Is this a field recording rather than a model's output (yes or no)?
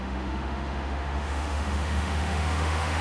no